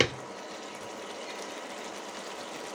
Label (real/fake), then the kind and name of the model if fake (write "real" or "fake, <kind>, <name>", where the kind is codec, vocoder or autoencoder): real